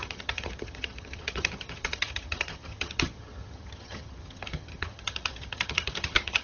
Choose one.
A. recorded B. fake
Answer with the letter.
B